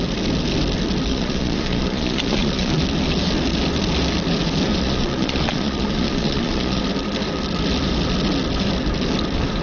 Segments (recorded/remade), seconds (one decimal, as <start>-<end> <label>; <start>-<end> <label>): 0.0-1.1 recorded; 1.1-2.8 remade; 2.8-4.7 recorded; 4.7-6.8 remade; 6.8-9.6 recorded